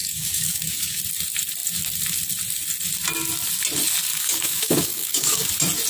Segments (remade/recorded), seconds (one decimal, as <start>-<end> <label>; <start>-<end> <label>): 0.0-1.0 remade; 1.0-4.1 recorded; 4.1-5.5 remade; 5.5-5.9 recorded